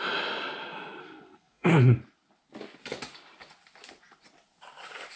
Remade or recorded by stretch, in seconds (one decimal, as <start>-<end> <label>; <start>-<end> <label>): 0.0-1.0 recorded; 1.0-2.0 remade; 2.0-5.2 recorded